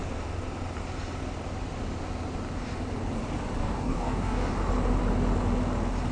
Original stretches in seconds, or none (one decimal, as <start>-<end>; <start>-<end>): 0.0-3.6; 4.5-6.1